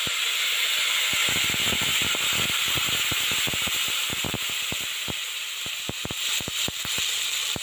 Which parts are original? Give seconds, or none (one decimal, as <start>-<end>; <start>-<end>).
0.0-7.6

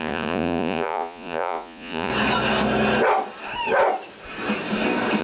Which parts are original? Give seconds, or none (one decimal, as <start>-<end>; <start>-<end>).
2.1-5.2

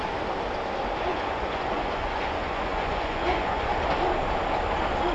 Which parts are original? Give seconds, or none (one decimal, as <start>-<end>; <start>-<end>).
0.0-1.1; 3.7-5.1